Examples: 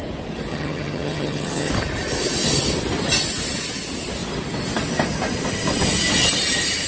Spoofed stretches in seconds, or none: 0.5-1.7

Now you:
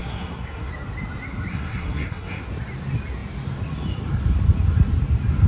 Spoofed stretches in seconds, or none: 0.0-0.7; 1.5-2.4